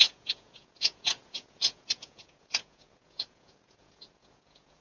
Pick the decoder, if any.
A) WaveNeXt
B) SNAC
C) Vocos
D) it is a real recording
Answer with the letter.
C